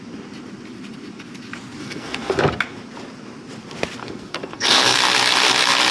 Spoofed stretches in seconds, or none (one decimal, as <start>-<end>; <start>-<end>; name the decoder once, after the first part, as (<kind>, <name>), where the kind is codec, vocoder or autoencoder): 1.8-2.4 (codec, SNAC); 4.0-5.0